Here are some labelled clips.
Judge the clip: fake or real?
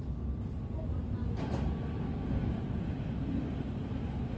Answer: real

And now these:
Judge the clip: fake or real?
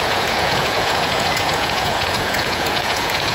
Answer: fake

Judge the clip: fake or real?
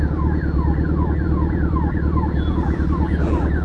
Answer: fake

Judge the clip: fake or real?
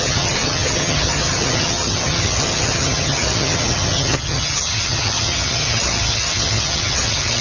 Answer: fake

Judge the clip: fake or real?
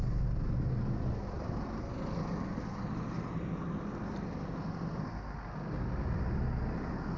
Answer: real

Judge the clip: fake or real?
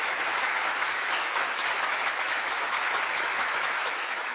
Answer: fake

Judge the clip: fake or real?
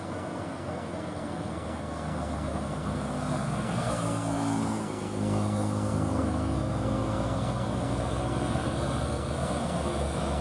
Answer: fake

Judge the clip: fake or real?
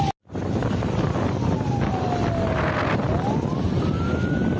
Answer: real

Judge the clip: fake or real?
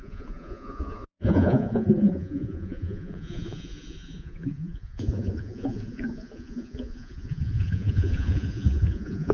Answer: fake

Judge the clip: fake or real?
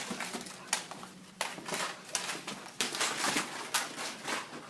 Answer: real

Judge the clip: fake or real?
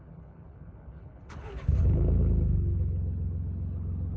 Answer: fake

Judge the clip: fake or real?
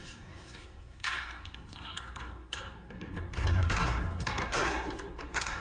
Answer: fake